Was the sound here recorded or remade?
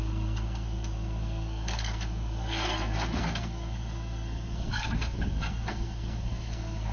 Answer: remade